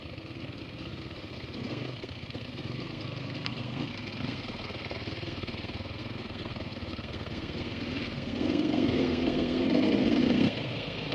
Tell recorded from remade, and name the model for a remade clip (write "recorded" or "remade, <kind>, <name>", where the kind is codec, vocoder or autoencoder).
remade, codec, SNAC